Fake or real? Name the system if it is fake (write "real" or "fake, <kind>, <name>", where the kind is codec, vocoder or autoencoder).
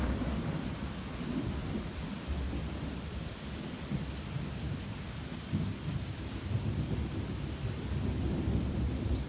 real